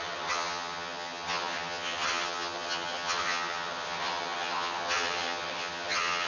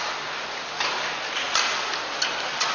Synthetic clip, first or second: first